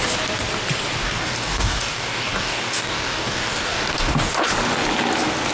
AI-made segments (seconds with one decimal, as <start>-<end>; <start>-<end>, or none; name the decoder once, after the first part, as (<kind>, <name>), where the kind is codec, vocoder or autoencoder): 1.0-4.3 (codec, DAC)

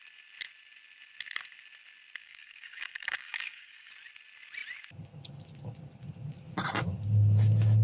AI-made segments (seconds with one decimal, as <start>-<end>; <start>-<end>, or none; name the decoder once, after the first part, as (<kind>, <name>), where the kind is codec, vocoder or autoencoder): 2.2-3.9 (codec, DAC)